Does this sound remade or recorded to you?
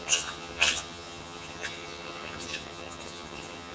remade